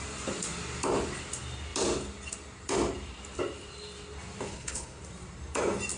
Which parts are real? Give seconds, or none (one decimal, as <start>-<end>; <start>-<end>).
0.0-4.5; 5.0-6.0

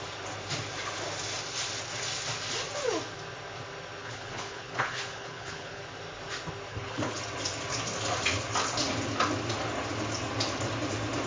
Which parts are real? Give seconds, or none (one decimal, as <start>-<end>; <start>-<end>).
0.0-4.0; 5.8-6.7; 7.2-11.3

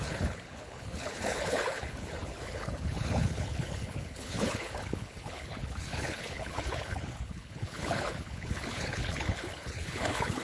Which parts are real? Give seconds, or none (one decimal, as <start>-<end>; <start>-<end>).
none